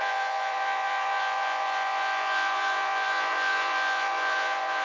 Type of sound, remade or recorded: remade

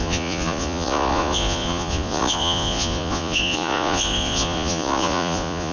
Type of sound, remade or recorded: remade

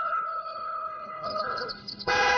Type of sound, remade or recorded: remade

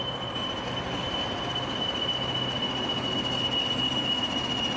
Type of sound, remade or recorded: recorded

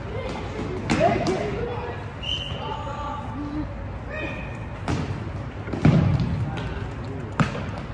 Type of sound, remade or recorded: recorded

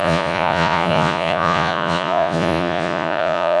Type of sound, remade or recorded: remade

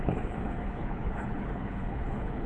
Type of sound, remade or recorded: remade